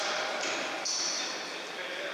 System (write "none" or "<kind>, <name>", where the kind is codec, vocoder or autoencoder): vocoder, BigVGAN v2